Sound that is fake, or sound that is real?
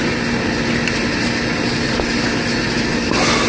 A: real